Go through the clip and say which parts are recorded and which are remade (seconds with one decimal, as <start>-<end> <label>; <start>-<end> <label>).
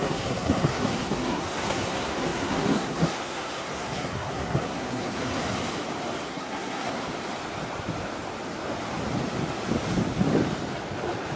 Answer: 0.0-5.4 remade; 5.4-6.3 recorded; 6.3-7.0 remade; 7.0-11.4 recorded